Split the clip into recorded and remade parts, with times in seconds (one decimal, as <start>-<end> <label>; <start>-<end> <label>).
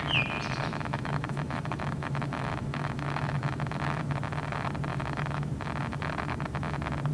0.0-0.7 recorded; 0.7-4.0 remade; 4.0-4.9 recorded; 4.9-5.5 remade; 5.5-7.1 recorded